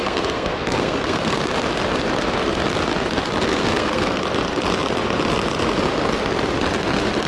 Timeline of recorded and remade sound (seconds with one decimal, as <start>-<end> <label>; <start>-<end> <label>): 0.0-1.4 remade; 1.4-3.5 recorded; 3.5-4.2 remade; 4.2-7.3 recorded